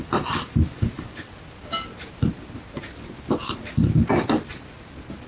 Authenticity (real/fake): real